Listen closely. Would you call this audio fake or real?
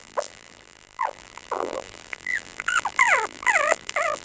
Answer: fake